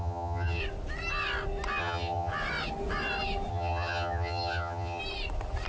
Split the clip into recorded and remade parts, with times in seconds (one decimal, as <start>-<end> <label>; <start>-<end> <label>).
0.0-0.6 remade; 0.6-1.8 recorded; 1.8-2.3 remade; 2.3-3.5 recorded; 3.5-5.0 remade; 5.0-5.7 recorded